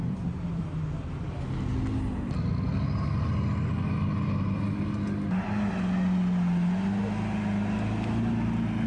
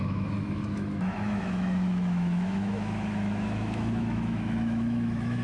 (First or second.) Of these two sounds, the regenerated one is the second